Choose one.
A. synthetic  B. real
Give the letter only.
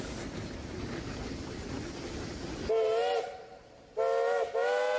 B